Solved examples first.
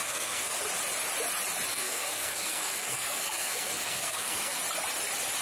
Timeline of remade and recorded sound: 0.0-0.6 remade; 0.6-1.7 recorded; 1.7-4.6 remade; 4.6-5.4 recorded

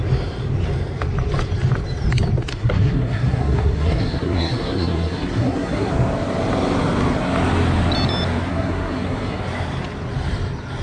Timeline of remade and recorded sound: 0.0-2.5 recorded; 2.5-5.9 remade; 5.9-8.5 recorded; 8.5-9.4 remade; 9.4-10.8 recorded

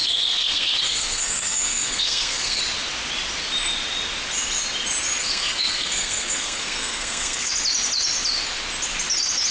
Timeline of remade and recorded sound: 0.0-2.6 remade; 2.6-5.2 recorded; 5.2-7.5 remade; 7.5-9.5 recorded

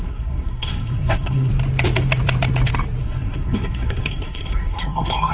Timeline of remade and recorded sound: 0.0-1.5 remade; 1.5-3.0 recorded; 3.0-5.3 remade

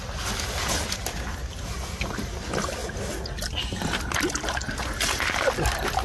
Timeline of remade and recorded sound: 0.0-6.0 recorded